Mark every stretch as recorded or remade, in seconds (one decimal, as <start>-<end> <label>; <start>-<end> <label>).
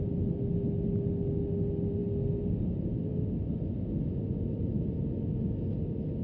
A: 0.0-6.2 recorded